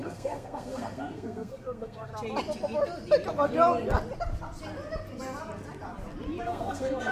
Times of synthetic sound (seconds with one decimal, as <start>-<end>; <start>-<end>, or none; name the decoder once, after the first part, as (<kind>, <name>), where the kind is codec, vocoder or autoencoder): 0.0-2.1 (codec, SNAC); 6.4-7.1